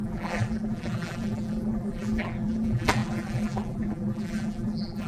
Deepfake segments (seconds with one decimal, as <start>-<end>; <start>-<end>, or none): 0.0-5.1

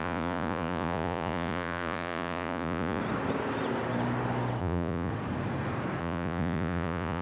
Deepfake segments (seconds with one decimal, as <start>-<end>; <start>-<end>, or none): 0.0-3.0; 4.6-5.1; 6.0-7.2

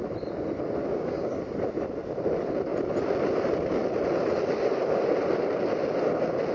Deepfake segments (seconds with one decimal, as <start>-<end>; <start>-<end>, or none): 0.9-1.4

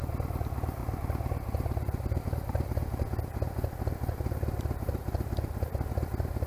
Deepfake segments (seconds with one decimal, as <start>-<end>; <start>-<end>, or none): 0.8-3.0

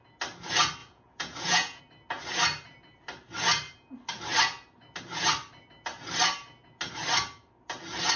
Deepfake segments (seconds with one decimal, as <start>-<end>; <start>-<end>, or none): 0.8-1.8

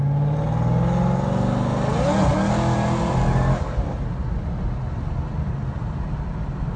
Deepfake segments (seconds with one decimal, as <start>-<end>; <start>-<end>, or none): none

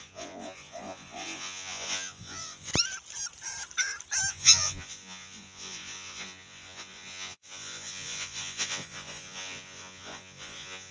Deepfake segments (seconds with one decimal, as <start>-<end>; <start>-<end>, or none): 0.0-2.7; 4.3-10.9